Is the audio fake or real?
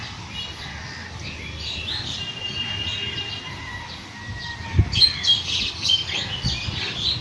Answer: real